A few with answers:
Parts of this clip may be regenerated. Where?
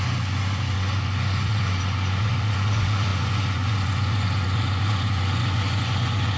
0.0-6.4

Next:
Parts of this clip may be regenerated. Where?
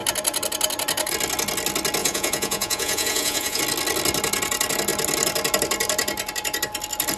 2.0-3.6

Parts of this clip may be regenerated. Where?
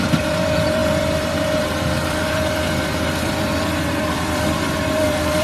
0.0-5.4